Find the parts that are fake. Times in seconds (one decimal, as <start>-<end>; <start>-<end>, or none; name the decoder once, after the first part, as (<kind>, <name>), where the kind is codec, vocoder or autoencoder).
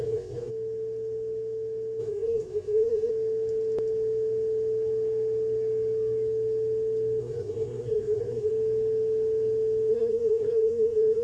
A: 0.0-0.5 (codec, SNAC); 2.0-3.1; 7.2-8.5; 9.9-11.2